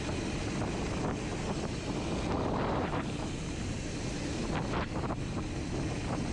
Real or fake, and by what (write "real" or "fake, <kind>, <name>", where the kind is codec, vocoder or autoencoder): real